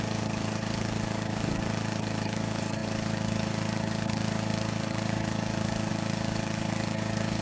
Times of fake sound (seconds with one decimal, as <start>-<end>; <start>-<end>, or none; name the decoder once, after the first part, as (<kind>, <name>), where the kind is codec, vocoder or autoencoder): 0.0-7.4 (codec, DAC)